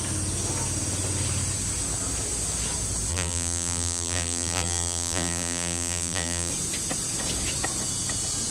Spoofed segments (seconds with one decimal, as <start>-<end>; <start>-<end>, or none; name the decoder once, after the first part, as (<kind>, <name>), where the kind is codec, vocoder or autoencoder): 3.1-6.5 (vocoder, BigVGAN v2)